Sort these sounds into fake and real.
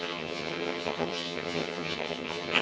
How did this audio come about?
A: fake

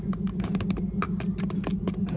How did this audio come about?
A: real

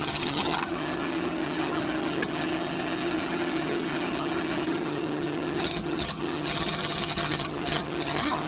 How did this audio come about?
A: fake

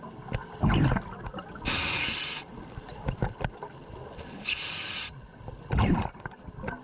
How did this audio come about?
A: real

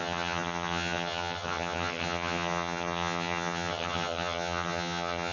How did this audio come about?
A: fake